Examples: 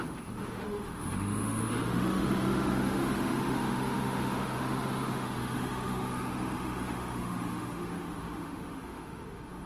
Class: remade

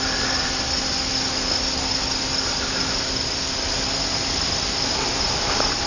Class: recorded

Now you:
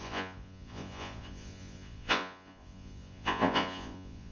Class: remade